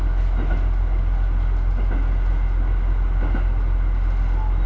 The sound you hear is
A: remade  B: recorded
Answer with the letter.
B